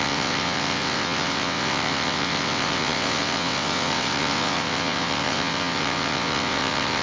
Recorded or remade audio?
remade